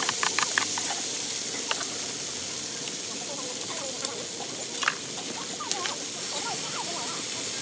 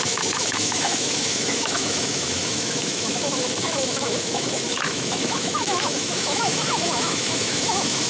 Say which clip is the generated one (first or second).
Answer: second